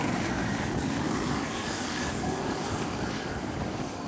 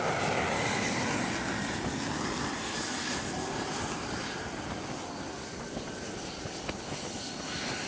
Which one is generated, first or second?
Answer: first